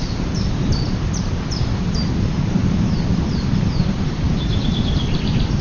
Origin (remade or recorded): remade